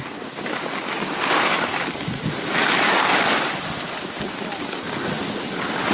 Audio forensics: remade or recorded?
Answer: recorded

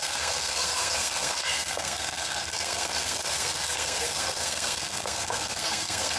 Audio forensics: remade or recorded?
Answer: remade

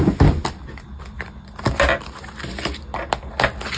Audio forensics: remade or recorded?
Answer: recorded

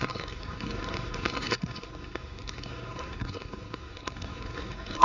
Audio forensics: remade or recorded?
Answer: remade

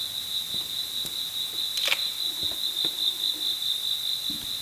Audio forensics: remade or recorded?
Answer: recorded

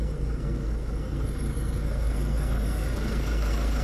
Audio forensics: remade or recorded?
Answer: remade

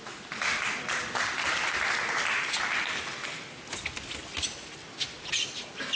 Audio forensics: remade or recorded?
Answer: recorded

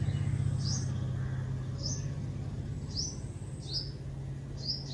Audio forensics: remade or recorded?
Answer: recorded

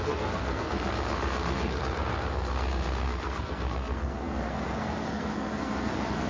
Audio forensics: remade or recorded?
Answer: remade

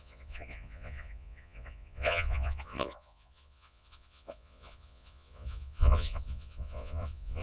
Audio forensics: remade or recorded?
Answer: remade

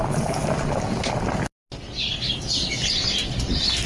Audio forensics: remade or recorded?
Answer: recorded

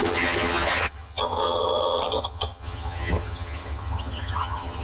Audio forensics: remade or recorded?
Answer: remade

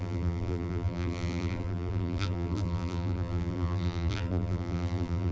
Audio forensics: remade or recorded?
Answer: remade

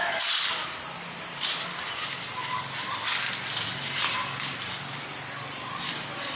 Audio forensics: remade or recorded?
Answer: recorded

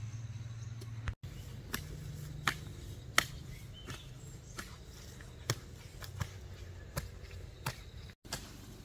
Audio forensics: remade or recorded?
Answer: recorded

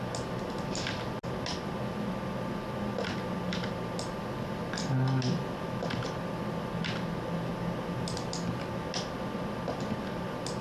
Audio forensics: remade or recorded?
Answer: recorded